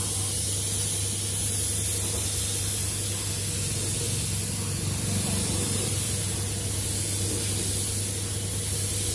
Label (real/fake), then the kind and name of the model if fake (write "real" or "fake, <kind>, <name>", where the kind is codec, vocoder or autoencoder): real